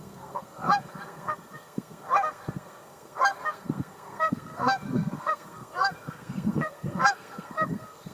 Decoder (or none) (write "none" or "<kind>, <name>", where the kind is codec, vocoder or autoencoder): codec, SNAC